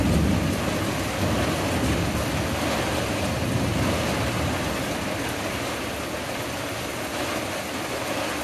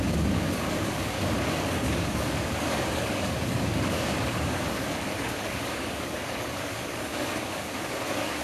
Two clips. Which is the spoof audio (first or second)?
second